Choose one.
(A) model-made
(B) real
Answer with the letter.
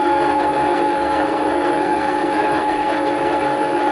A